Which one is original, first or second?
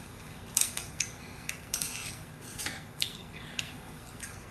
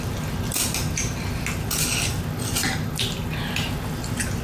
second